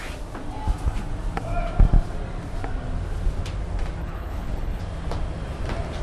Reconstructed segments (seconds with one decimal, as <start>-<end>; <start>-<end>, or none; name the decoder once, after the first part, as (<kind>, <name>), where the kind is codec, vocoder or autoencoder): 4.0-4.8 (codec, HILCodec)